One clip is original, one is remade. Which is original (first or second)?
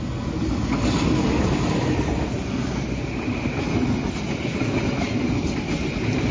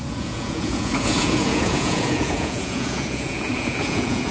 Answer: first